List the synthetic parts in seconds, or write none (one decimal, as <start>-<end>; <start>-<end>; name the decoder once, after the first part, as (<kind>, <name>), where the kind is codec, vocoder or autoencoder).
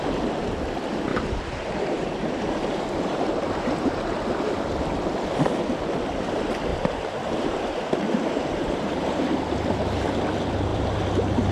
1.1-3.9 (vocoder, BigVGAN v2); 6.7-9.2